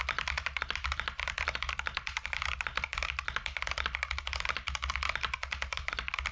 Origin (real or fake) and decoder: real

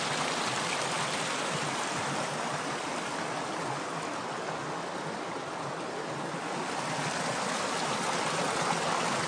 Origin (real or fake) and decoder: real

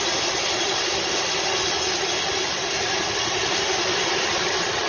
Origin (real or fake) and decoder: real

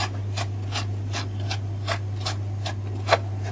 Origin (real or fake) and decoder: real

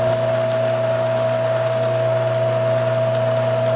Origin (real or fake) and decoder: real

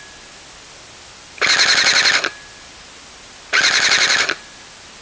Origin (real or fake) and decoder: real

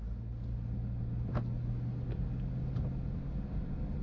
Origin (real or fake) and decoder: real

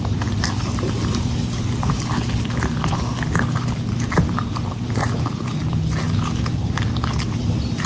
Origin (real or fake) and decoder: real